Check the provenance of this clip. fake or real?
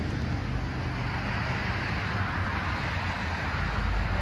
real